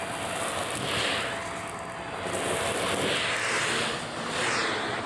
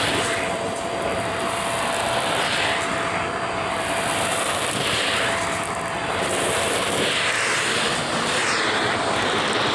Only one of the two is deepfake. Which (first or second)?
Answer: second